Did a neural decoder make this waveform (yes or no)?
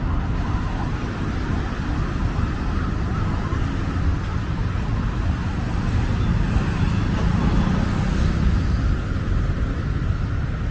no